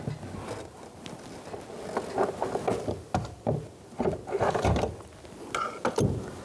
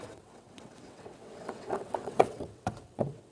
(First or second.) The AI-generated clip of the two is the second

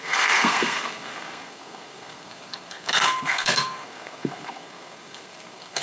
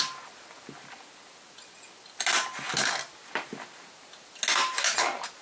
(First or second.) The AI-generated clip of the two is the first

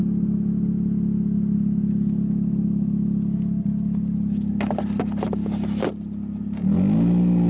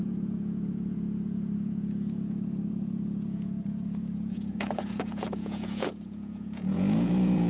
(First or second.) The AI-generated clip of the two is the second